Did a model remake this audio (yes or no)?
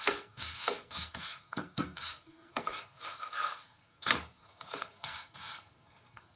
yes